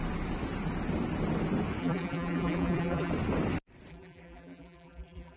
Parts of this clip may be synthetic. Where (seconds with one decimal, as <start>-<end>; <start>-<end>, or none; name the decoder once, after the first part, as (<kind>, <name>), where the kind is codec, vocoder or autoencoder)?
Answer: 1.8-3.1 (vocoder, BigVGAN v2); 3.9-5.4

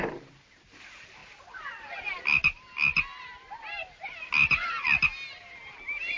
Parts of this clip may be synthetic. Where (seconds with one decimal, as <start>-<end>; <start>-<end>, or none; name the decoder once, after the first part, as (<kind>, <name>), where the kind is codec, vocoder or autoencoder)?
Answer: 1.2-2.2 (vocoder, BigVGAN v2)